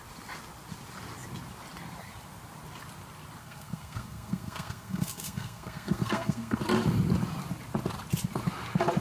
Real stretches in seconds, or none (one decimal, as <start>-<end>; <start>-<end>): 0.0-3.4; 6.6-9.0